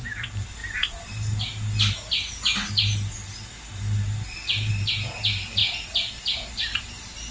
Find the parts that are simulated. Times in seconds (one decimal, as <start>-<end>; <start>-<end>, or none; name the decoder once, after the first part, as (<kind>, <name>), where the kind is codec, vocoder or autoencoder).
none